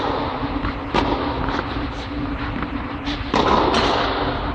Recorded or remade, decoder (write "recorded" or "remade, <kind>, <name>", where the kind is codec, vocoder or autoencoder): recorded